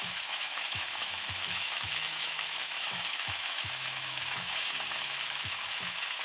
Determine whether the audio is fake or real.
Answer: fake